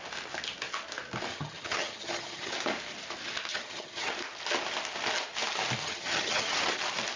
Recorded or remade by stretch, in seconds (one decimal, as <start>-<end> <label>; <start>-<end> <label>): 0.0-1.3 recorded; 1.3-2.5 remade; 2.5-3.5 recorded; 3.5-4.1 remade; 4.1-5.8 recorded; 5.8-6.8 remade; 6.8-7.2 recorded